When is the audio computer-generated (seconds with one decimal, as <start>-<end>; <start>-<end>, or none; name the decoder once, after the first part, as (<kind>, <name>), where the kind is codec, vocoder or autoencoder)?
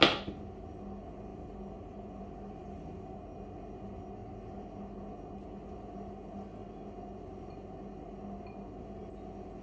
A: 1.3-2.2 (vocoder, BigVGAN v2); 2.6-3.2